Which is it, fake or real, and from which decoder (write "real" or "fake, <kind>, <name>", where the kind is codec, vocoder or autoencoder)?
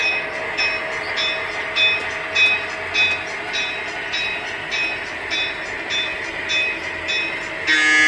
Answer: real